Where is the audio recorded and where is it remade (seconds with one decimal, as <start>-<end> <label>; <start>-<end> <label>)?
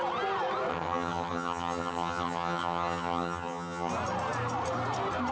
0.0-0.7 recorded; 0.7-3.9 remade; 3.9-5.3 recorded